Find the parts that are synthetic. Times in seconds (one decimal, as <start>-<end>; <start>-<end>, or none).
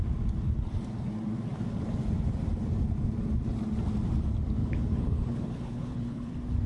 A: 4.6-6.3